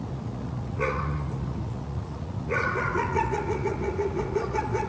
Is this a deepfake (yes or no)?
yes